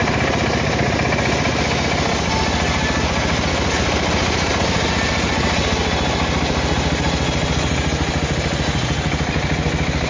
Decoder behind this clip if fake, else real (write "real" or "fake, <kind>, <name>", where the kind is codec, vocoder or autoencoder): real